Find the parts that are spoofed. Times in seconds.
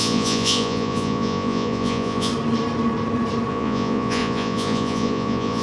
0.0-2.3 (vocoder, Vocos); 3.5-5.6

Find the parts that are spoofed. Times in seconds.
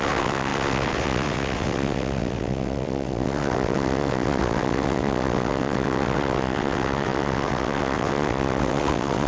0.0-9.3 (vocoder, WaveNeXt)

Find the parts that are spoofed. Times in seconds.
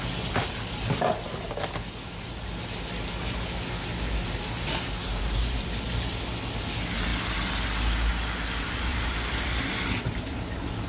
5.0-5.8 (vocoder, BigVGAN v2); 8.9-9.6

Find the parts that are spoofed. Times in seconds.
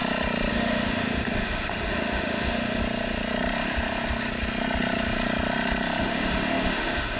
0.5-2.8 (autoencoder, DAC-VAE); 6.0-7.2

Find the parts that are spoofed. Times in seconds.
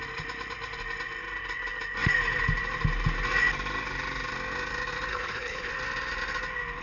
5.1-5.7 (codec, HILCodec)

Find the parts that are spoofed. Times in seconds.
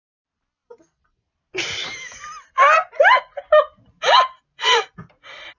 none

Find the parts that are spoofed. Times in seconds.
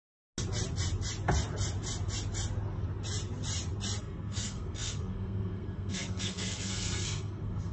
4.0-7.7 (codec, SNAC)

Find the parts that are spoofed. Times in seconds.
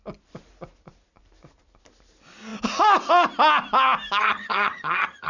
4.2-5.3 (vocoder, HiFi-GAN)